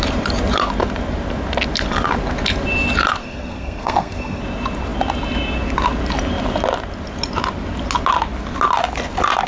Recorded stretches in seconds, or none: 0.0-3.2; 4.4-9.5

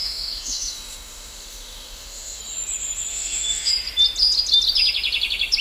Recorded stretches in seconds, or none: 2.4-3.1; 3.7-5.6

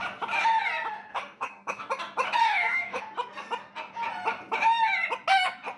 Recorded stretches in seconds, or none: 0.0-1.1; 1.9-2.4; 3.0-5.8

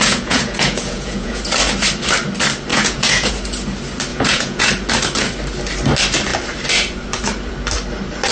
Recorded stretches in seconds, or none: 1.4-2.7; 3.3-4.1; 4.7-8.3

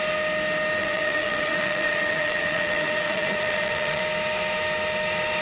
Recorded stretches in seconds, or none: 0.0-0.8; 4.0-5.4

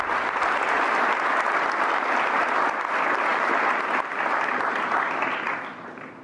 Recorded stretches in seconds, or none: 0.0-6.2

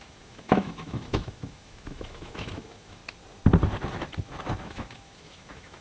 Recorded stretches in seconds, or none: 3.0-4.6